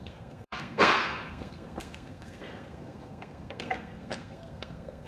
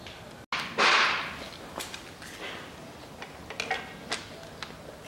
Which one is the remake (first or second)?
first